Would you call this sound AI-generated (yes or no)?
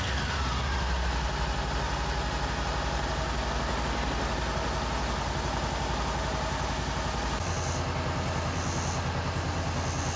no